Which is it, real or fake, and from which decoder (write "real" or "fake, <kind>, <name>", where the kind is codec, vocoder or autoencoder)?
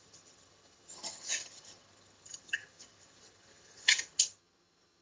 fake, vocoder, HiFi-GAN